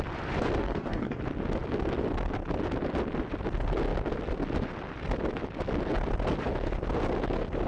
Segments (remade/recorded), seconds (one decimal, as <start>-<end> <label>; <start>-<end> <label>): 0.0-0.6 recorded; 0.6-1.2 remade; 1.2-7.7 recorded